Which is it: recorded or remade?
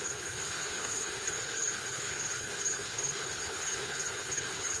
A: remade